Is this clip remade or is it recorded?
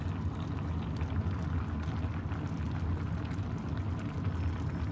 recorded